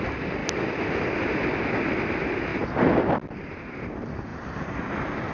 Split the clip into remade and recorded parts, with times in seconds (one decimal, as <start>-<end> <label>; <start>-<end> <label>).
0.0-0.4 recorded; 0.4-1.1 remade; 1.1-4.3 recorded; 4.3-4.8 remade; 4.8-5.3 recorded